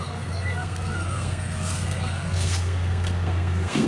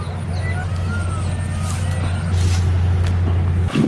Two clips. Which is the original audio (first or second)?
second